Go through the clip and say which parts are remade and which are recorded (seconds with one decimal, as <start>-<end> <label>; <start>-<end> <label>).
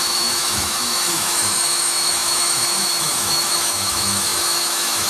0.0-5.1 remade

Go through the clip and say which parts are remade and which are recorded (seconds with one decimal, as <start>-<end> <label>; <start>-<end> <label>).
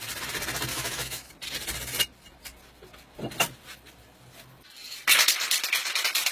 0.0-0.7 recorded; 0.7-1.3 remade; 1.3-6.3 recorded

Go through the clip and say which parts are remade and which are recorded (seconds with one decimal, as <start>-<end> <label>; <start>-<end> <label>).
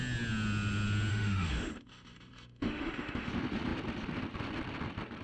0.0-1.1 recorded; 1.1-3.3 remade; 3.3-5.2 recorded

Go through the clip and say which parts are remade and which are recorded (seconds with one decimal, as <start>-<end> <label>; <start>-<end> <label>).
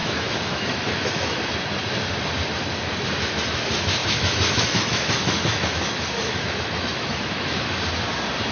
0.0-1.4 remade; 1.4-4.0 recorded; 4.0-7.8 remade; 7.8-8.5 recorded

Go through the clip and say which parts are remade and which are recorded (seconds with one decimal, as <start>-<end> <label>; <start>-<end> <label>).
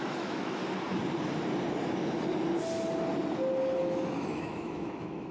0.0-0.6 remade; 0.6-3.8 recorded; 3.8-5.3 remade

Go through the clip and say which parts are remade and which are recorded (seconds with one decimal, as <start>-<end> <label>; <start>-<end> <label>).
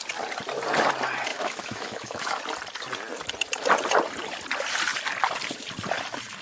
0.0-1.3 recorded; 1.3-2.4 remade; 2.4-6.4 recorded